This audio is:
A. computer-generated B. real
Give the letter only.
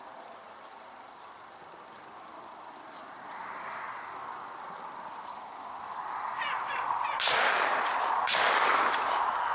B